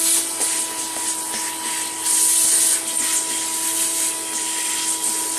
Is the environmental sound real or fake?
real